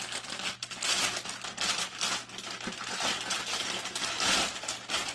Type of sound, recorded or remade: recorded